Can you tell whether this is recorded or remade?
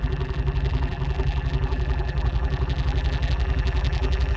remade